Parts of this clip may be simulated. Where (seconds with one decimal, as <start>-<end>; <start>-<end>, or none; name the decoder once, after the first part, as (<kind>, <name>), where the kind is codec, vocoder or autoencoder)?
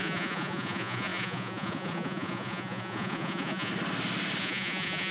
0.0-3.7 (vocoder, Vocos); 4.4-5.1